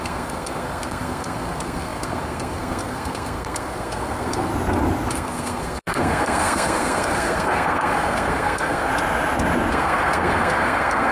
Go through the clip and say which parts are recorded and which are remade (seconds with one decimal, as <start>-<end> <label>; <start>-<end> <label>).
0.0-4.5 remade; 4.5-5.1 recorded; 5.1-8.9 remade; 8.9-9.7 recorded; 9.7-11.1 remade